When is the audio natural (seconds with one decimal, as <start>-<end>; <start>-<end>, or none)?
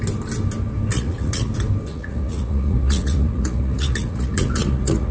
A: 0.0-0.9; 1.5-1.9